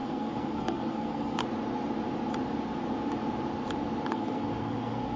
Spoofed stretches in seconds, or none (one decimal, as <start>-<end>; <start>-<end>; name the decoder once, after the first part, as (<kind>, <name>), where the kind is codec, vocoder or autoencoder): 0.0-1.4 (codec, SNAC); 4.1-5.2